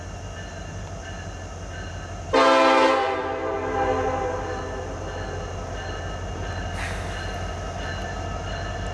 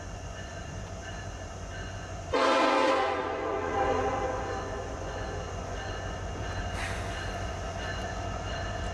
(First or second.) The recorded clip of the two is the first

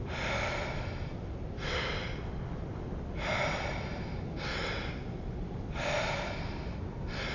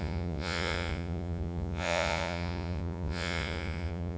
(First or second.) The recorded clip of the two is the first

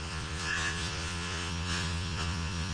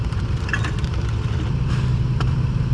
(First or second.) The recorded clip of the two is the second